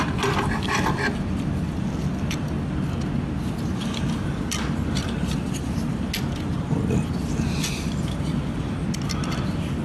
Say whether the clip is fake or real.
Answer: real